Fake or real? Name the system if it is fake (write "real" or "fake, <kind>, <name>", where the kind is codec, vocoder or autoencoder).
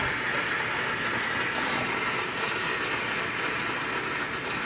real